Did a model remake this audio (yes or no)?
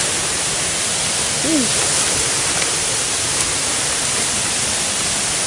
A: no